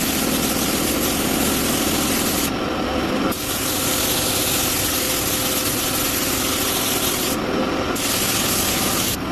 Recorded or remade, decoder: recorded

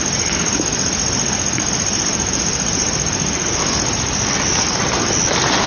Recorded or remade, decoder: recorded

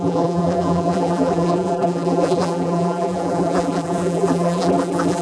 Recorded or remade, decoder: remade, vocoder, BigVGAN v2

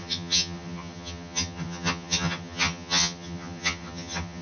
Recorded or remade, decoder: remade, vocoder, HiFi-GAN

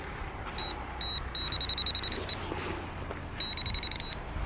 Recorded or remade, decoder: recorded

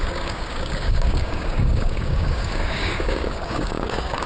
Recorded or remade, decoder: remade, codec, DAC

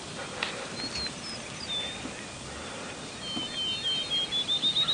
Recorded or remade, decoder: recorded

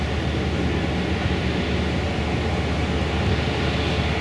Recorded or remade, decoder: recorded